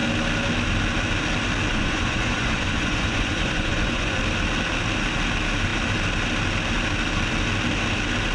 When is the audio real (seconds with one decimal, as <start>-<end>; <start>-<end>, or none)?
0.0-1.7; 4.2-8.3